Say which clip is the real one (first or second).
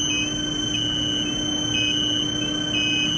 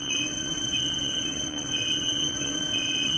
first